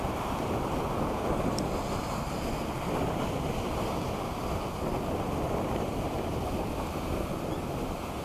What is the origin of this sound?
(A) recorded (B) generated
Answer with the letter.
A